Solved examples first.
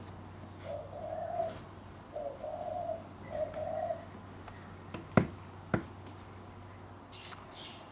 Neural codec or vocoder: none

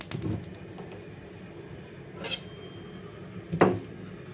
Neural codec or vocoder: none